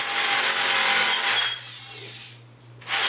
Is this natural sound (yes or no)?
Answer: yes